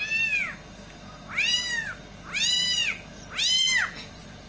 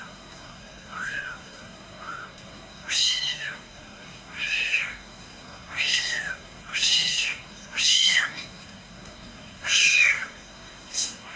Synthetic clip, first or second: second